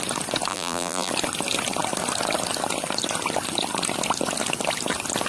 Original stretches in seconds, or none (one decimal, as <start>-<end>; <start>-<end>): 0.0-0.5; 1.1-5.3